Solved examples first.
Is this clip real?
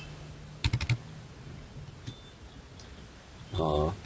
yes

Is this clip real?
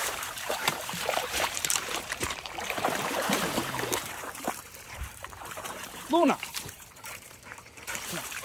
no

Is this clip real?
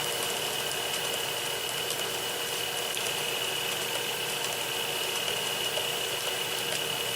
yes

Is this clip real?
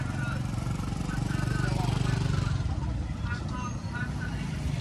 yes